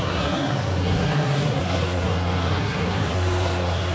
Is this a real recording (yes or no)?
no